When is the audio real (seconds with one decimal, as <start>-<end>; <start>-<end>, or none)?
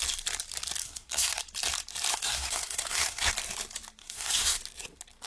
0.0-0.8; 1.4-2.1; 3.3-4.0; 4.6-5.3